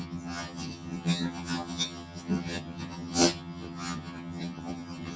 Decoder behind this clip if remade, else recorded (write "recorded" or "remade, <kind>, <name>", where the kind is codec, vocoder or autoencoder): remade, vocoder, HiFi-GAN